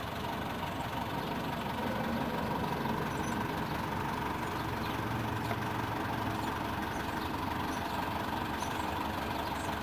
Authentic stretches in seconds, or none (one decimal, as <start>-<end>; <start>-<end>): 0.0-6.8; 9.4-9.8